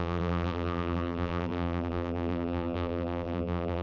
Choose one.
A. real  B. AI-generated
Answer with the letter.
B